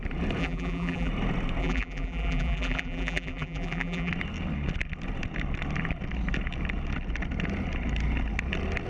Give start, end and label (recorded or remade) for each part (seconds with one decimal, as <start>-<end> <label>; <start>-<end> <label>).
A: 0.0-0.4 recorded; 0.4-1.1 remade; 1.1-1.6 recorded; 1.6-4.1 remade; 4.1-8.9 recorded